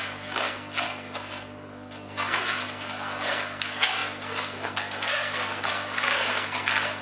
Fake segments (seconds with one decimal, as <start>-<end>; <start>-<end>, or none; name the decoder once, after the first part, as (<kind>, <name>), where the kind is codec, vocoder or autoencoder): 0.0-7.0 (codec, SNAC)